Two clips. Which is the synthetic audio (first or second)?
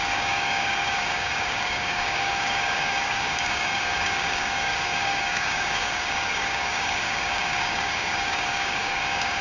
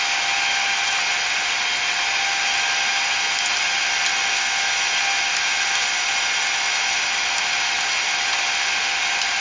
first